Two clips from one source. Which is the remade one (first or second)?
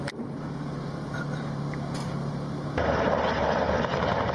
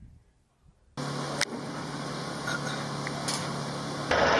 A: first